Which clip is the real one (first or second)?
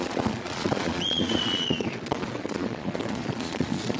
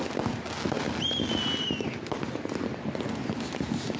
second